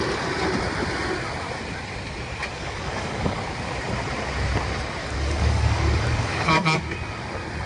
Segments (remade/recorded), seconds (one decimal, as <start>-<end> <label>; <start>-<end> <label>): 0.0-2.5 recorded; 2.5-3.4 remade; 3.4-5.0 recorded; 5.0-6.8 remade; 6.8-7.7 recorded